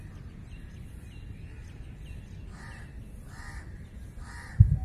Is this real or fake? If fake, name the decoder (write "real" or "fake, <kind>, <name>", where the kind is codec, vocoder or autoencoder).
real